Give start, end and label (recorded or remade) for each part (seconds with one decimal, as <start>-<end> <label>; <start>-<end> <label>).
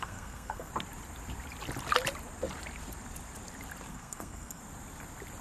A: 0.0-0.7 remade; 0.7-3.9 recorded; 3.9-4.6 remade; 4.6-5.4 recorded